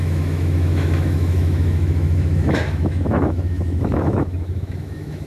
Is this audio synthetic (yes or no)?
yes